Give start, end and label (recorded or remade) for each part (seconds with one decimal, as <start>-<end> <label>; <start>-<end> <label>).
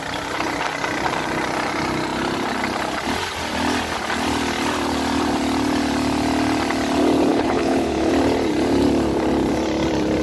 0.0-7.3 recorded; 7.3-8.1 remade; 8.1-10.2 recorded